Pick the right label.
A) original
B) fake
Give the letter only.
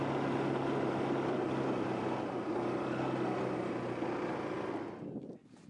A